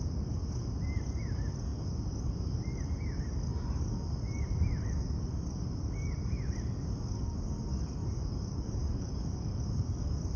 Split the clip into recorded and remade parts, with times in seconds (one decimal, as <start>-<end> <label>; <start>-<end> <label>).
0.0-8.0 recorded; 8.0-9.7 remade; 9.7-10.4 recorded